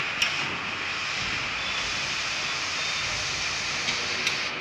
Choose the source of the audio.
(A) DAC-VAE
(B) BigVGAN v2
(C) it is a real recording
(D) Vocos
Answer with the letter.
C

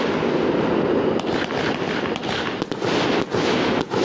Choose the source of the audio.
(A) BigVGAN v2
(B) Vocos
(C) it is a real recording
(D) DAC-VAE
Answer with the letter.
C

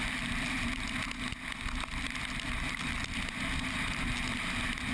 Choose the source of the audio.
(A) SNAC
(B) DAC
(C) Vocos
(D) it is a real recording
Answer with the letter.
D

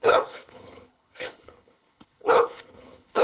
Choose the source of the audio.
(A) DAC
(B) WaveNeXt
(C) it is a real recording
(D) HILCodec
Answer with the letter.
D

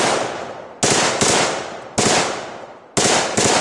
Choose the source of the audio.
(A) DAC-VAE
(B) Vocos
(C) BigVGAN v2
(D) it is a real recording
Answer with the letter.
D